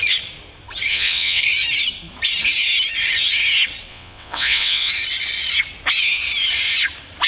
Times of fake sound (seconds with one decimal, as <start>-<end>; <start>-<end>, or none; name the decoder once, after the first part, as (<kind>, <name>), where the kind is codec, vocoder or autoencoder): 0.9-1.4 (vocoder, WaveNeXt); 3.9-4.9

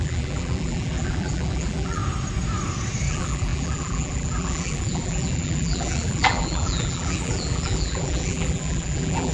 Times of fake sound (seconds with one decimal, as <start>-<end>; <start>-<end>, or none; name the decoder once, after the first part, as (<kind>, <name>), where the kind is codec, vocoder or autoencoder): 0.0-2.0 (vocoder, BigVGAN v2); 3.1-9.3

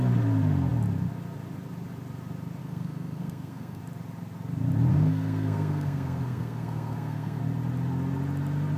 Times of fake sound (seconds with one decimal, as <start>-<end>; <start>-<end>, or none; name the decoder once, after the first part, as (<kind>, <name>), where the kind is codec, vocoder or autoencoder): 2.6-3.8 (codec, SNAC); 4.9-7.4